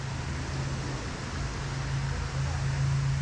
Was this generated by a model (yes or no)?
no